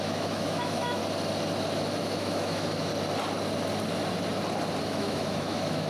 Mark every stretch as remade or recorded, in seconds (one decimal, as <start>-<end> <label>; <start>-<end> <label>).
0.0-1.0 remade; 1.0-2.0 recorded; 2.0-2.9 remade; 2.9-4.8 recorded; 4.8-5.9 remade